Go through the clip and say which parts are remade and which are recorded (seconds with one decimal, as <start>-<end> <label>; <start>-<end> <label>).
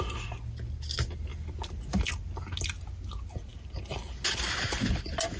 0.0-5.4 recorded